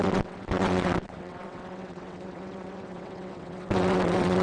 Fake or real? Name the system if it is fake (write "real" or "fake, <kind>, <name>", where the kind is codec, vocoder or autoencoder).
fake, vocoder, WaveNeXt